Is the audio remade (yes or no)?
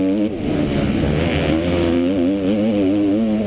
no